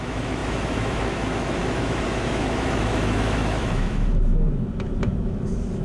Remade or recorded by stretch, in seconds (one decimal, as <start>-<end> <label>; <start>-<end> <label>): 0.0-5.8 remade